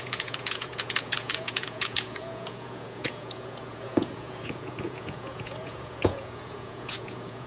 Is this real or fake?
fake